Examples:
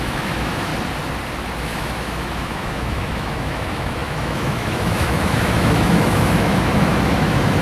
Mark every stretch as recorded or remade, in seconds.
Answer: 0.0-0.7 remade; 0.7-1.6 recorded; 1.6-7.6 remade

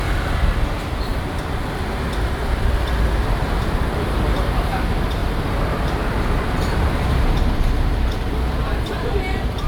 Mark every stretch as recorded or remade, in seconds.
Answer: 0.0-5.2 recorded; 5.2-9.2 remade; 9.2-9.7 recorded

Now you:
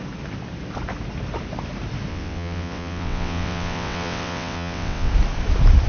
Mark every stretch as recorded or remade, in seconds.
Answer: 0.0-2.1 recorded; 2.1-5.1 remade; 5.1-5.9 recorded